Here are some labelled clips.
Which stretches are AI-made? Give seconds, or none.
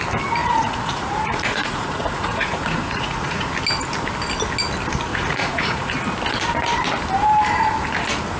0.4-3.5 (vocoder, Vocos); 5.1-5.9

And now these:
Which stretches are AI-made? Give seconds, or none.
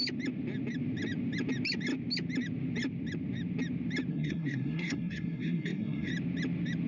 4.1-6.1 (codec, SNAC)